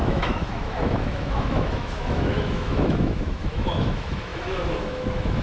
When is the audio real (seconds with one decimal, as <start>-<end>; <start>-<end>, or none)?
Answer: none